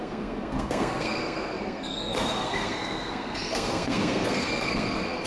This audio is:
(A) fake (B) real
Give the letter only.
A